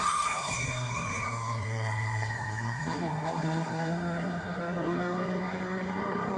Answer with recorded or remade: remade